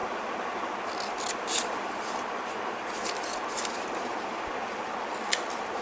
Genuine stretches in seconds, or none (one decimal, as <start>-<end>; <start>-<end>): 0.0-5.8